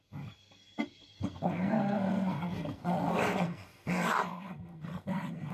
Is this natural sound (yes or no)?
no